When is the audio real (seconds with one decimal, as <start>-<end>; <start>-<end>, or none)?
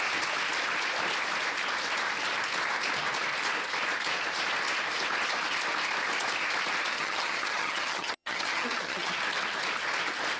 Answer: 0.0-6.9; 9.1-10.4